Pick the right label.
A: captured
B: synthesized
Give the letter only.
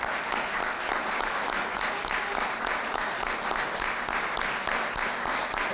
A